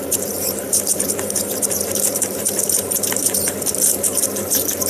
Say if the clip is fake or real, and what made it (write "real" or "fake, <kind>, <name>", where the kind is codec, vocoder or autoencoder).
fake, vocoder, BigVGAN v2